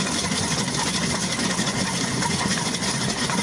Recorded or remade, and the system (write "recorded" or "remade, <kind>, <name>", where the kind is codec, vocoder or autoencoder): remade, vocoder, Vocos